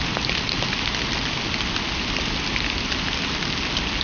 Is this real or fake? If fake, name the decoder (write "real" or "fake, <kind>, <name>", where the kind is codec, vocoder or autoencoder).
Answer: real